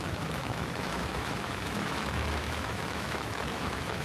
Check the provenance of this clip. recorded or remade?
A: remade